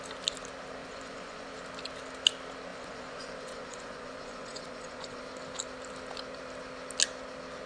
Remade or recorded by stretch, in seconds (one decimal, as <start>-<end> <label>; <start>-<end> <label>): 0.0-0.8 recorded; 0.8-1.5 remade; 1.5-2.7 recorded; 2.7-5.2 remade; 5.2-7.7 recorded